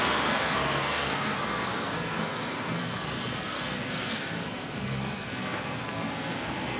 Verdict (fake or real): fake